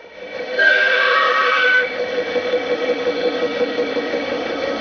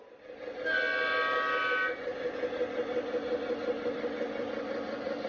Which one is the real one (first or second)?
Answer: second